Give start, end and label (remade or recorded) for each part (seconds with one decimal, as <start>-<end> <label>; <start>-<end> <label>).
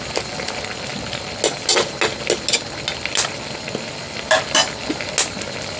0.0-5.8 recorded